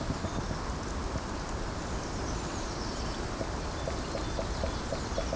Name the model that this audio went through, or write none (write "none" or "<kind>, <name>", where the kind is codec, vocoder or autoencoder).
none